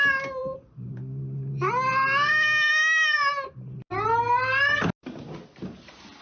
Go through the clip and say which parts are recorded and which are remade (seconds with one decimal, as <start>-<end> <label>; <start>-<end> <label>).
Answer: 0.0-6.2 recorded